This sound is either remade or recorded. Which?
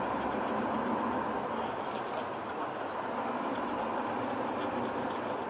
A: recorded